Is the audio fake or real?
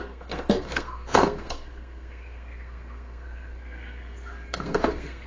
fake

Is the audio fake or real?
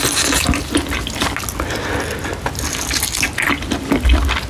real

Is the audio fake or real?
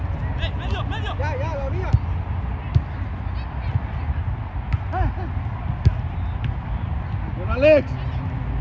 real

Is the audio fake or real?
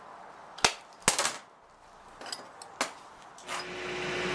real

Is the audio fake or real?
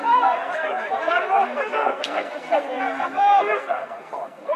fake